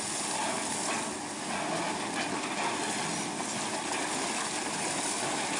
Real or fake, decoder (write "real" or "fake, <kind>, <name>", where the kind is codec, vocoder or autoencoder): real